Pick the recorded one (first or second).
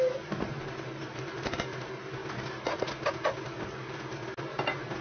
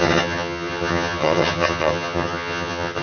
first